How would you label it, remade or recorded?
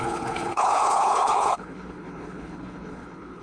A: remade